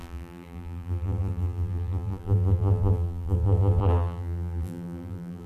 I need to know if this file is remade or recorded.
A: remade